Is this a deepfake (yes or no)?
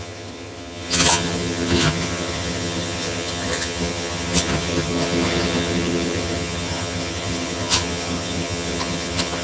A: yes